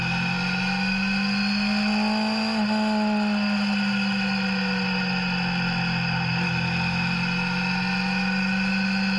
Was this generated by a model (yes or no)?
no